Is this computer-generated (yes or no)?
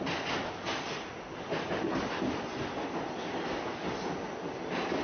no